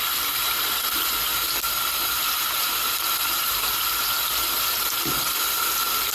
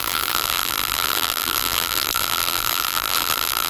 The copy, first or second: second